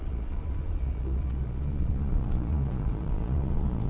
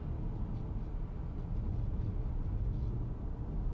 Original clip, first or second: second